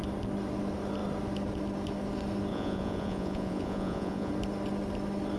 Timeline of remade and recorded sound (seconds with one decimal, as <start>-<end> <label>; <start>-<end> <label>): 0.0-2.5 recorded; 2.5-4.3 remade; 4.3-5.4 recorded